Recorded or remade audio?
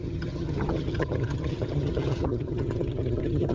remade